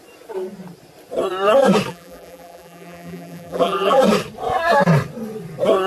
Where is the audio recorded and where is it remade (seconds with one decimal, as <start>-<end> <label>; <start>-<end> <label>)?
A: 0.0-1.9 recorded; 1.9-4.0 remade; 4.0-5.9 recorded